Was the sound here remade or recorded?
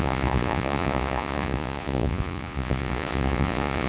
remade